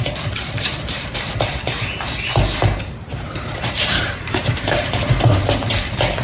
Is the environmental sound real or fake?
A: fake